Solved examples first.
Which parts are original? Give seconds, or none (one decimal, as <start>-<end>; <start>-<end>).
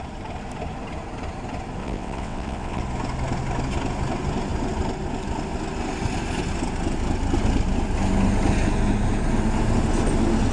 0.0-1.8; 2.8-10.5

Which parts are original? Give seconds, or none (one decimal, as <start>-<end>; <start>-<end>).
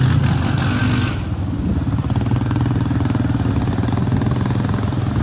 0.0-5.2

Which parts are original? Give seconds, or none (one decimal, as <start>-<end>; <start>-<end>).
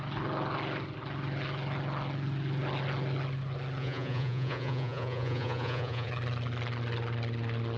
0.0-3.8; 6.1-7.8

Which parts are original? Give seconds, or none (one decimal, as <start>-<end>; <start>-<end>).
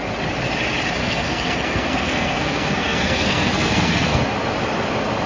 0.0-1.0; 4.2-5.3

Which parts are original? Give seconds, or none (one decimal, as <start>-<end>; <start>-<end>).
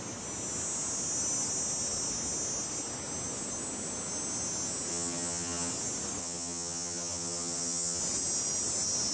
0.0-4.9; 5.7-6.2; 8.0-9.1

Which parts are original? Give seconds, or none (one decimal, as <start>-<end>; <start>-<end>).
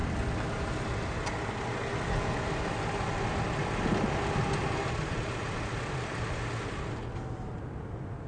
0.0-8.3